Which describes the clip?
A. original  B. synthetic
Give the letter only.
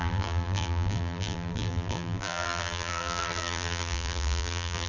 B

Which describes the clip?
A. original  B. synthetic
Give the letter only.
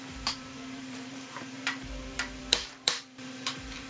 B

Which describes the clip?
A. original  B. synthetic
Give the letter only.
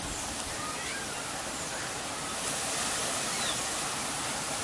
A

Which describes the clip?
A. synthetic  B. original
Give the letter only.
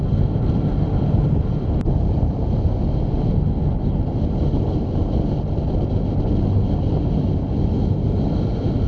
B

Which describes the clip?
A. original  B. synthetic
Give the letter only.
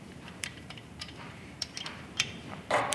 B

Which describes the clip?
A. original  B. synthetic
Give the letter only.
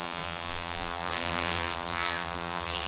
B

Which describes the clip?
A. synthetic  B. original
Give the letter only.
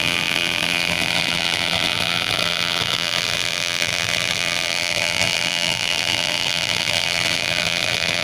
A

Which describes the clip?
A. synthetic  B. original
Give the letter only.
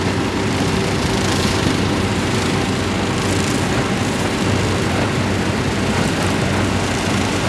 B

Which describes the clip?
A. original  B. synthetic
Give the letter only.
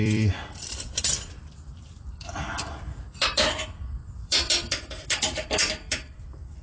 B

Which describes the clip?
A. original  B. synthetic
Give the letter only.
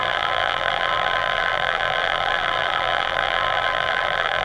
B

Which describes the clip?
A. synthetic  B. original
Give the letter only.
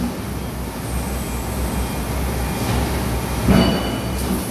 B